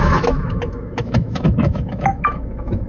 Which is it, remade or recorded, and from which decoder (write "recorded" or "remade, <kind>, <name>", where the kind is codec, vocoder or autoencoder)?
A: remade, autoencoder, DAC-VAE